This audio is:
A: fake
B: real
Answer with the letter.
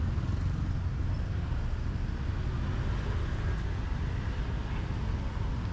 B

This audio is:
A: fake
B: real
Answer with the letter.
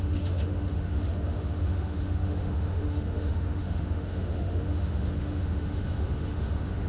A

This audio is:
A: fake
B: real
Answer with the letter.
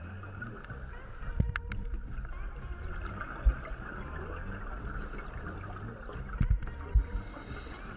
B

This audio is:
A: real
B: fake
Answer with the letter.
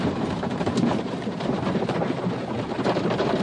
B